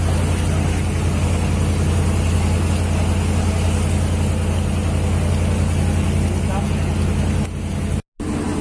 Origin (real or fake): real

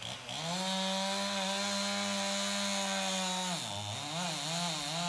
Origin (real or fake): real